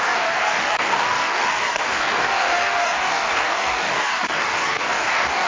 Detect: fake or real fake